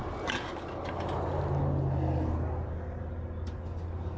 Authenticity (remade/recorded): recorded